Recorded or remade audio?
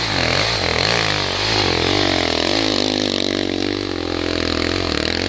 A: recorded